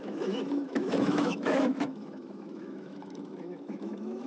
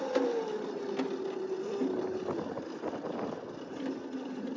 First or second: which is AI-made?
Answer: first